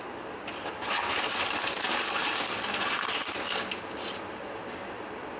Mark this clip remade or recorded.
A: recorded